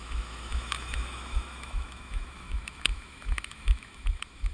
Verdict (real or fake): fake